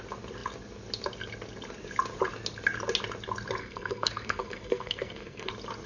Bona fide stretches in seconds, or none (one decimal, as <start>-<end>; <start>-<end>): 0.0-3.6; 5.5-5.9